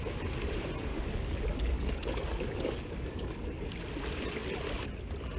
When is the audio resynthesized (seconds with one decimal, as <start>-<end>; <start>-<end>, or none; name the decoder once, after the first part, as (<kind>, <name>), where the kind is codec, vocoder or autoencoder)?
0.9-3.7 (codec, DAC)